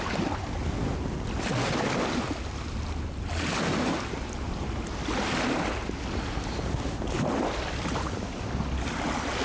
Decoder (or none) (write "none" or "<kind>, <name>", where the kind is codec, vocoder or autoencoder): none